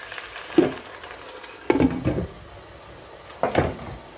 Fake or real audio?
real